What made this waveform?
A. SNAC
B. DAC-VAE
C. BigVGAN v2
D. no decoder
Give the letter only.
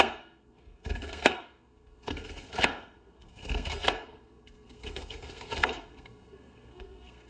A